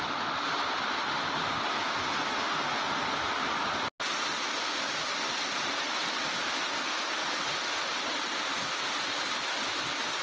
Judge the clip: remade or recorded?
recorded